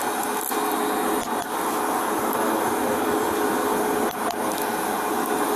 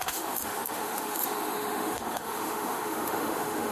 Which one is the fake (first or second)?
second